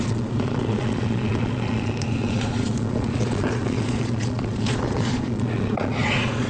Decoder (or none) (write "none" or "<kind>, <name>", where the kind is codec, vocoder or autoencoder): vocoder, Vocos